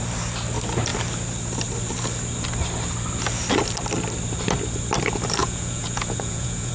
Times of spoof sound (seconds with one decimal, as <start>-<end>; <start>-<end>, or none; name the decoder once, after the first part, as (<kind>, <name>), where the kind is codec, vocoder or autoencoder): 5.4-6.7 (vocoder, Vocos)